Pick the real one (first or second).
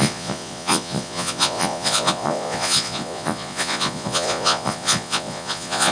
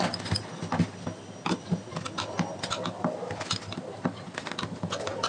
second